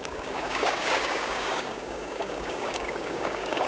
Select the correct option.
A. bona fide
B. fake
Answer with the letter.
B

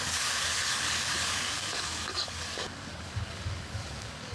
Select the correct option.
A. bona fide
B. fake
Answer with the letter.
B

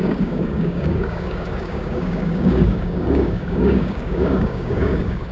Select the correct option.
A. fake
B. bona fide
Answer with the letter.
A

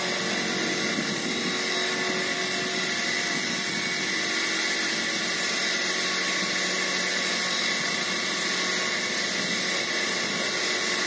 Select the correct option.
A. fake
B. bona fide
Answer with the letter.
B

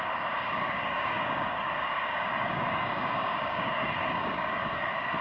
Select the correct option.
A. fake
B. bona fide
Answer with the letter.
A